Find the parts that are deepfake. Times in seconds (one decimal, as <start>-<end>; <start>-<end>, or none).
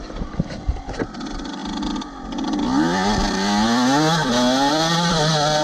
0.0-1.6; 4.7-5.6